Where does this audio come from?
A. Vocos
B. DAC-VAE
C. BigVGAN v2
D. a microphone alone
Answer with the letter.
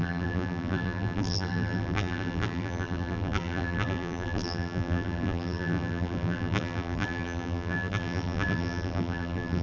C